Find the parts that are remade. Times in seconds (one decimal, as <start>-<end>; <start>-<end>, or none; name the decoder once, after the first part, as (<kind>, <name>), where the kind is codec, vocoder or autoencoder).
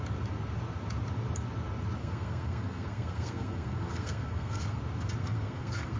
2.0-4.8 (codec, SNAC); 5.2-6.0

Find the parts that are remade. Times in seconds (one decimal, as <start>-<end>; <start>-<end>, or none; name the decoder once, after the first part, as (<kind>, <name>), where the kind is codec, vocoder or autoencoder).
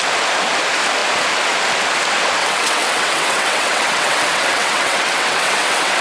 2.4-6.0 (vocoder, WaveNeXt)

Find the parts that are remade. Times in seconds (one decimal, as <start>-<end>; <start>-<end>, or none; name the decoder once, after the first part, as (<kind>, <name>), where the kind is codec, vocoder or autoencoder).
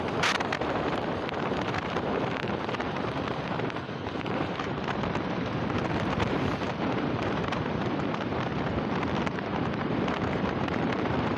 0.0-8.5 (vocoder, BigVGAN v2); 9.1-11.4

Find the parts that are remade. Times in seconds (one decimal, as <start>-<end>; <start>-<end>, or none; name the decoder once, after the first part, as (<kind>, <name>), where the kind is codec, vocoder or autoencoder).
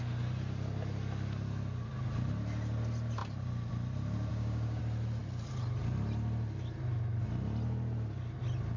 4.3-4.8 (codec, DAC)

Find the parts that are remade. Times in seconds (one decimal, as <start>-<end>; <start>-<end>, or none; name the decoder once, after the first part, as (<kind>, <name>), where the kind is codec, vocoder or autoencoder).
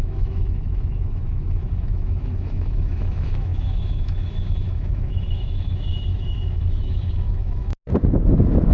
0.0-7.7 (autoencoder, DAC-VAE)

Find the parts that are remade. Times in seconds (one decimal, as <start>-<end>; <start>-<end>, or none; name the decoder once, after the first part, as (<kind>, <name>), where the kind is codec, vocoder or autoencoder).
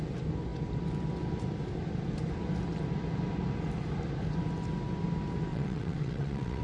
5.5-6.6 (vocoder, WaveNeXt)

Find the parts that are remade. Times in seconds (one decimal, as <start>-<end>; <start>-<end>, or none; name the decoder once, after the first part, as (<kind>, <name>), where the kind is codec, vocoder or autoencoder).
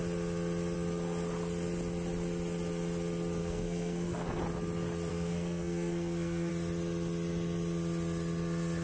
3.4-4.4 (codec, SNAC); 5.1-6.5